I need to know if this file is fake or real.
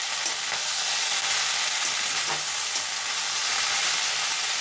real